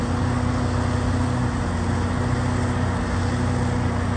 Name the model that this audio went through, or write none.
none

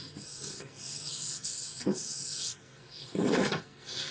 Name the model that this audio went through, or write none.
codec, SNAC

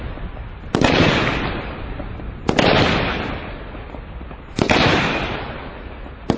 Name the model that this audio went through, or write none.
none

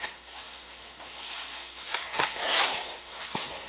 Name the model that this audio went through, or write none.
codec, SNAC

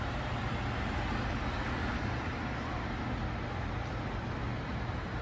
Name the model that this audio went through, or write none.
none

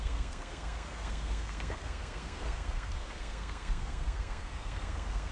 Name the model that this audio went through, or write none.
codec, SNAC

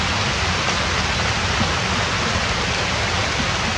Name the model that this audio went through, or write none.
none